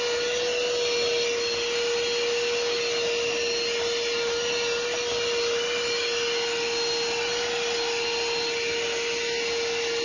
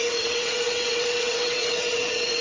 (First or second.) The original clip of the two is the first